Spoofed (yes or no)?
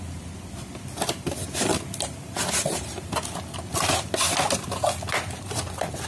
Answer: yes